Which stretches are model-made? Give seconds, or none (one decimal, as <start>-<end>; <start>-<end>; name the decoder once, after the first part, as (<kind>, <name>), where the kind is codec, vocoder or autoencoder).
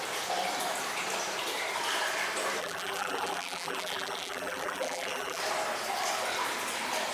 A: 2.6-5.4 (vocoder, BigVGAN v2)